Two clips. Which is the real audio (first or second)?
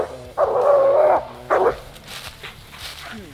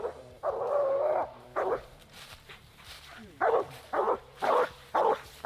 first